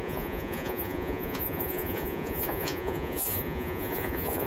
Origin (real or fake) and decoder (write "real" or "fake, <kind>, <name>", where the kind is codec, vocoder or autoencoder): fake, vocoder, Vocos